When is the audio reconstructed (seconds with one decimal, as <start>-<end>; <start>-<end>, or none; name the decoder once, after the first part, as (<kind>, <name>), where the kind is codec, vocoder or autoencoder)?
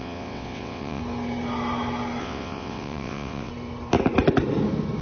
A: 0.0-1.0 (vocoder, WaveNeXt); 2.2-3.5